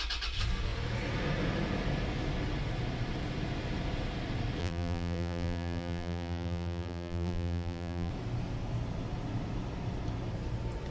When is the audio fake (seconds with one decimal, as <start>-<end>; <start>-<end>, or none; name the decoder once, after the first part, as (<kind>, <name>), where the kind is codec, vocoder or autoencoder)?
4.6-8.1 (vocoder, BigVGAN v2)